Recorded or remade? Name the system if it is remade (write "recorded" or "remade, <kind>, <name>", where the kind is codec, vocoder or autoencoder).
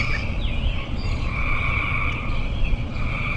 remade, vocoder, Vocos